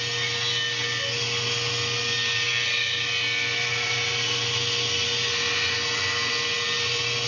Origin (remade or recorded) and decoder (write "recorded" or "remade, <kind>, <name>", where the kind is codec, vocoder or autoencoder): recorded